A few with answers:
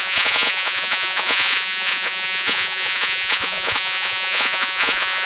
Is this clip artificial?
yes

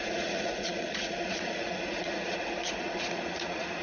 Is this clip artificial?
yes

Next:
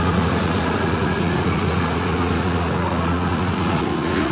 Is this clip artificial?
yes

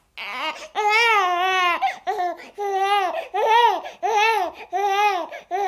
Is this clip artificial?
no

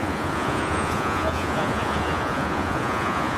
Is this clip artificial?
yes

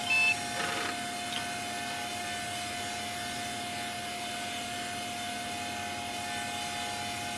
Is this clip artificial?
no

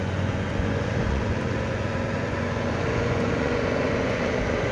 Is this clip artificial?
yes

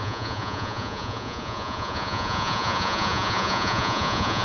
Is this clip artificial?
yes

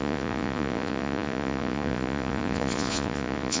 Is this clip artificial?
yes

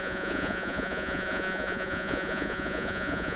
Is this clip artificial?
yes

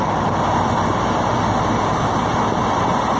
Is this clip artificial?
no